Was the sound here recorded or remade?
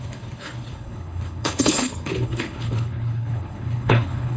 remade